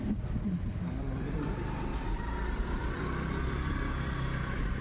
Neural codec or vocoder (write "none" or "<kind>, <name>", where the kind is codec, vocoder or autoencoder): none